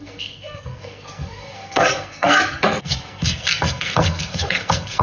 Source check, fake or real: fake